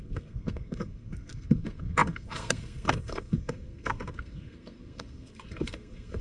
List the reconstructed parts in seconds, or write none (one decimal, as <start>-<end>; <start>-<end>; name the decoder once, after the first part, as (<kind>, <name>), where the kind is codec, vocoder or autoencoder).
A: 0.0-6.2 (codec, SNAC)